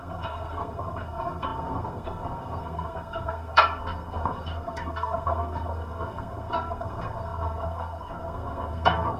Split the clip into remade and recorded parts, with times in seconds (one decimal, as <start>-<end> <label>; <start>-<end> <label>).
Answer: 0.0-9.2 remade